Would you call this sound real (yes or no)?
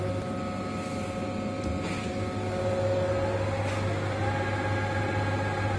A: yes